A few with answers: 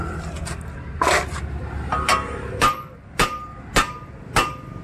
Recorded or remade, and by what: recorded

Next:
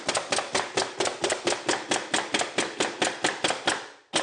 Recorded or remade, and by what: recorded